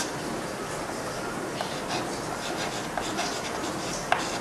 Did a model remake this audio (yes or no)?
no